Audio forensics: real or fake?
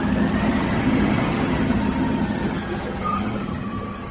fake